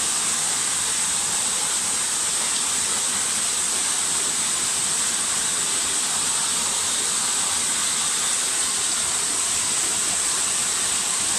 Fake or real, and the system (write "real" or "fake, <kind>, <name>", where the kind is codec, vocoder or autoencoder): real